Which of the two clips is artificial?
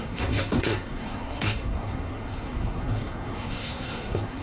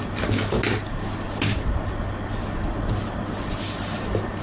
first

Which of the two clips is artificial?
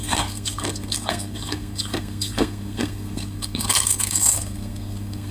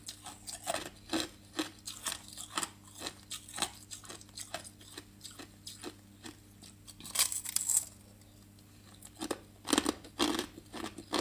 first